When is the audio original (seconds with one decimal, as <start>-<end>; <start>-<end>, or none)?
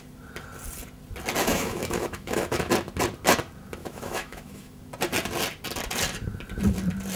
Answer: 0.0-1.4; 2.7-3.8; 4.8-7.2